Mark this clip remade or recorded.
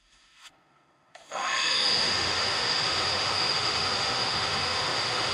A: remade